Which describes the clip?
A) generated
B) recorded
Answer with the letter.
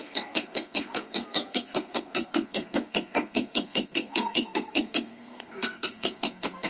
A